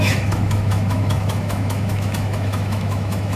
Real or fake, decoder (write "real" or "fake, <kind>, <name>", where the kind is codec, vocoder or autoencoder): fake, autoencoder, DAC-VAE